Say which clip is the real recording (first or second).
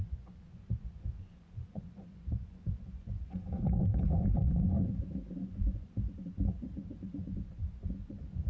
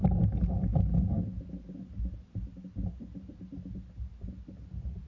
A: second